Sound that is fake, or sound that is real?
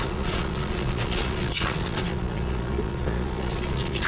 fake